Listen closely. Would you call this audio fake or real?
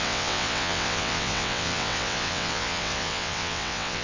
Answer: fake